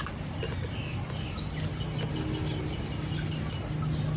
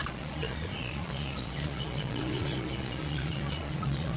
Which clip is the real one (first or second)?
first